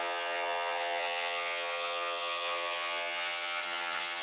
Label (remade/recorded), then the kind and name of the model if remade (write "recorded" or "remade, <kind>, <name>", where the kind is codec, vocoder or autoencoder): remade, vocoder, HiFi-GAN